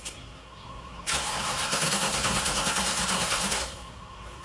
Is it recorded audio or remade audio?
remade